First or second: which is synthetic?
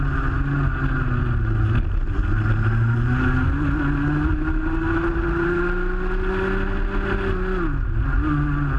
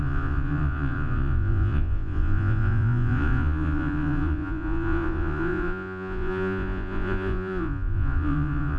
second